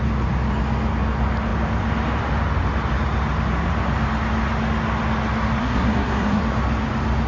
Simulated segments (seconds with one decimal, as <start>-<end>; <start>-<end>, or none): 5.6-6.4